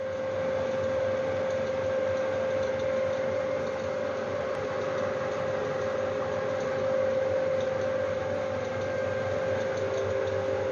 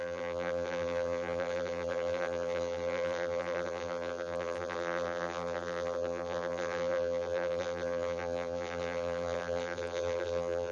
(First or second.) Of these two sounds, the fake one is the second